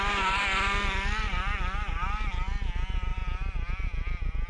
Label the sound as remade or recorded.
recorded